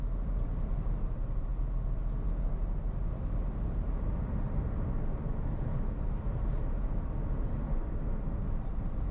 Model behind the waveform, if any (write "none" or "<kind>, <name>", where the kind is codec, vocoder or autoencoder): none